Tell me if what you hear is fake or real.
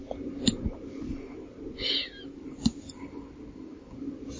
real